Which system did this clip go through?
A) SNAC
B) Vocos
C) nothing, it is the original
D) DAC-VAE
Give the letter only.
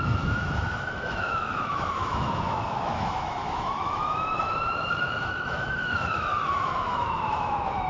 D